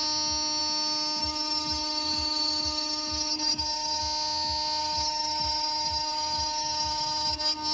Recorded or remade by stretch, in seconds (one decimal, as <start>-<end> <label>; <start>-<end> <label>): 0.0-1.2 recorded; 1.2-4.0 remade; 4.0-4.8 recorded; 4.8-7.3 remade; 7.3-7.7 recorded